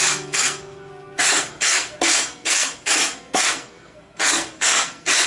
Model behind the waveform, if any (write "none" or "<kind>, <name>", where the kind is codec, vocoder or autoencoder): codec, SNAC